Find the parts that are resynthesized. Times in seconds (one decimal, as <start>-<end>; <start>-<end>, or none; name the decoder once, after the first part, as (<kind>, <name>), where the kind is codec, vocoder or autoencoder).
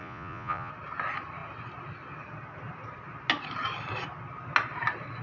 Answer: 0.0-0.7 (vocoder, Vocos)